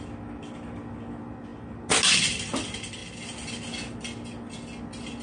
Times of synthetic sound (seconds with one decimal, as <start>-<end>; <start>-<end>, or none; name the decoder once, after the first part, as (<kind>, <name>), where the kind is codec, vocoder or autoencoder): none